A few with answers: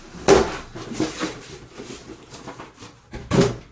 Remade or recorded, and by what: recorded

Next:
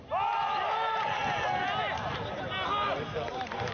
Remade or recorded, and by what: recorded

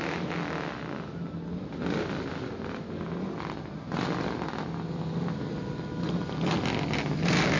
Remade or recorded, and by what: recorded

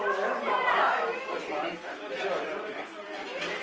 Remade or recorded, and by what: recorded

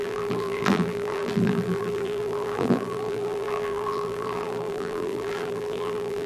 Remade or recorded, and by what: remade, vocoder, BigVGAN v2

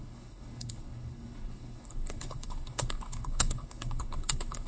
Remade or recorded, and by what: remade, codec, HILCodec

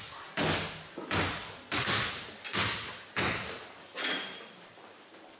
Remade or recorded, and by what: recorded